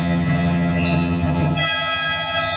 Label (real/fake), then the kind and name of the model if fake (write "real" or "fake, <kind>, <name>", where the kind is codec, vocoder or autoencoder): fake, vocoder, HiFi-GAN